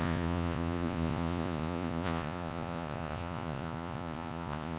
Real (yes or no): no